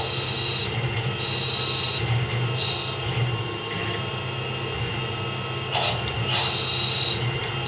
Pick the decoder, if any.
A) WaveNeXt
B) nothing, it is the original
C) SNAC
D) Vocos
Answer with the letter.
B